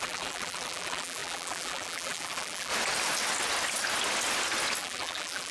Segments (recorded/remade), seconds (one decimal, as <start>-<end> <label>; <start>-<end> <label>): 0.0-2.7 remade; 2.7-4.8 recorded; 4.8-5.5 remade